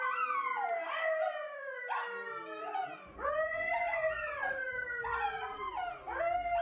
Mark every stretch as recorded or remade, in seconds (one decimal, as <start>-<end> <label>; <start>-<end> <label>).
0.0-1.2 recorded; 1.2-1.8 remade; 1.8-2.6 recorded; 2.6-5.7 remade; 5.7-6.6 recorded